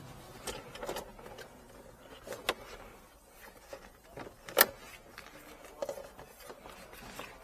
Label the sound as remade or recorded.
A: recorded